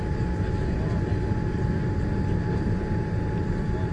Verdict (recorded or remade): recorded